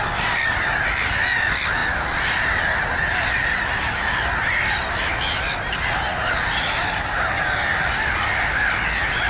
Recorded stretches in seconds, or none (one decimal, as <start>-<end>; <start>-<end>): 0.0-1.8; 4.0-9.3